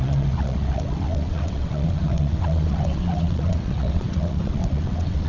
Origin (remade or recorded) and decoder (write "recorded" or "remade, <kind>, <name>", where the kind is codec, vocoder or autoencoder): remade, vocoder, WaveNeXt